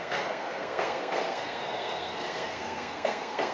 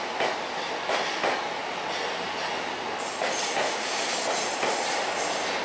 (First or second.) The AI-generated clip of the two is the first